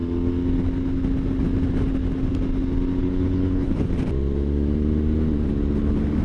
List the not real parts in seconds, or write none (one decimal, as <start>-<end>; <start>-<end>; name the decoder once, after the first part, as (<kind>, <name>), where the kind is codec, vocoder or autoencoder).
3.0-3.9 (codec, HILCodec)